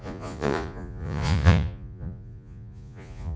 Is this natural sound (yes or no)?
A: no